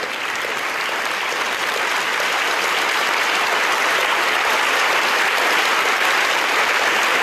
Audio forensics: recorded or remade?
remade